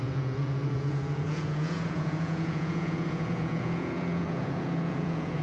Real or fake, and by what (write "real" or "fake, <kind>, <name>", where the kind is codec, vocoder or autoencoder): fake, vocoder, Vocos